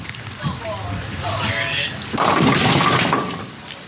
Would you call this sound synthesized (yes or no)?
no